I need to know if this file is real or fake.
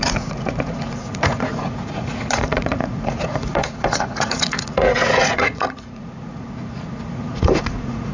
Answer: fake